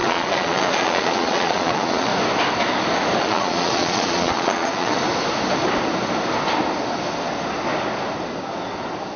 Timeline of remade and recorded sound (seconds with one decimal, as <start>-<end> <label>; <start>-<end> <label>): 0.0-2.1 remade; 2.1-3.2 recorded; 3.2-5.0 remade; 5.0-9.2 recorded